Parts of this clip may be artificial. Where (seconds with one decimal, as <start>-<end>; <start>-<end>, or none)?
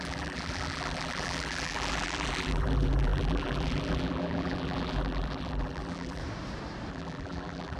0.0-6.2; 6.9-7.8